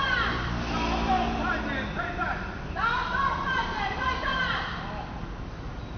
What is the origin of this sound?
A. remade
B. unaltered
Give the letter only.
B